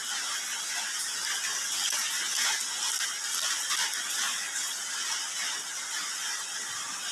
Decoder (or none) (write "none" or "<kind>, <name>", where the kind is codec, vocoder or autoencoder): none